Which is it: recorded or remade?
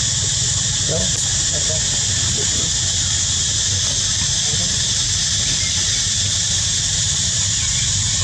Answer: recorded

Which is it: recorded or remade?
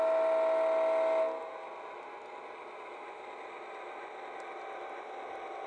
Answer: recorded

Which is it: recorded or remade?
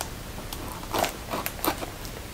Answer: recorded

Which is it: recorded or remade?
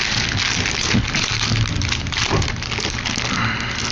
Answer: recorded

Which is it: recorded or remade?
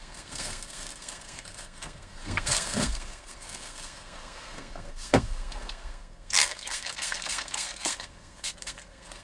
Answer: remade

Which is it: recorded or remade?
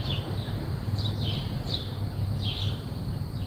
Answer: remade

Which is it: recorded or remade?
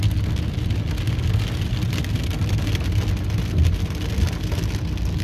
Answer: recorded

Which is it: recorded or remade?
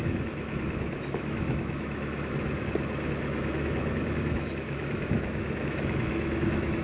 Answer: remade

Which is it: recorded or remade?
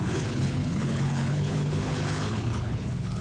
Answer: remade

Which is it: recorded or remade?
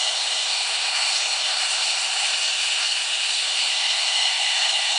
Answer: remade